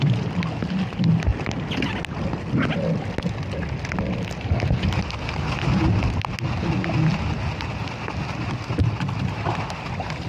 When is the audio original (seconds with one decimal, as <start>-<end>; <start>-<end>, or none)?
0.0-10.3